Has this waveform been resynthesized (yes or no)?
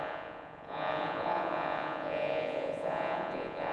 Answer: yes